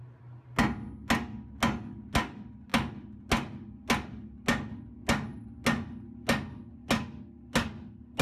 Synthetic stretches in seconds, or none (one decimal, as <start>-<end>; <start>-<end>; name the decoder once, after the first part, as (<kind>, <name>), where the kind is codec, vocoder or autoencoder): none